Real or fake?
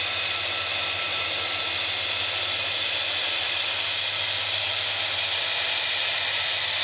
real